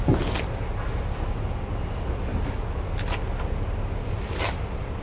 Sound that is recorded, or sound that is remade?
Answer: recorded